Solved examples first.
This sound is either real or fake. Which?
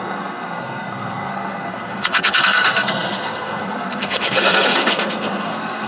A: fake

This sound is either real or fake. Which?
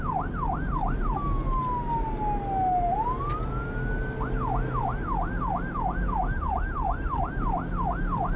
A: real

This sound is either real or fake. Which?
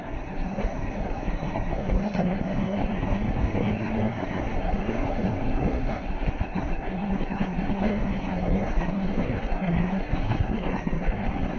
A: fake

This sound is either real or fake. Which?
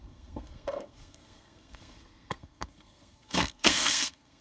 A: fake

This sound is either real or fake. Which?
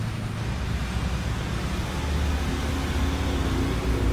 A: real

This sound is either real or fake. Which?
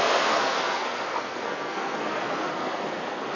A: fake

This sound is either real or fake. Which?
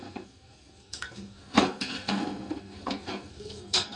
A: fake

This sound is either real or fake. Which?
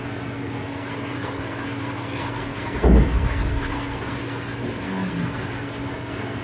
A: fake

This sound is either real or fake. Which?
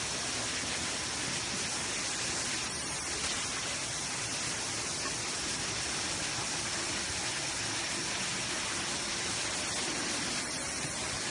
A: real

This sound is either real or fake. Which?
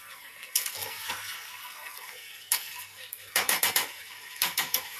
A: fake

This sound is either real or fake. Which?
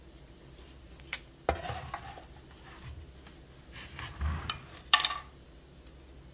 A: real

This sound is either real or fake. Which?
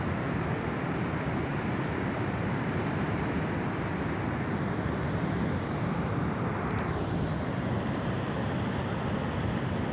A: real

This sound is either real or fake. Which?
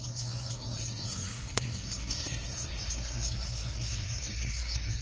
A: fake